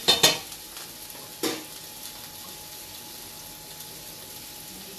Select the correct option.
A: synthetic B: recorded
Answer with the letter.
B